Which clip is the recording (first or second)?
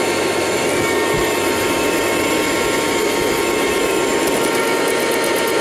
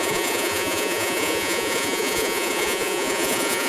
first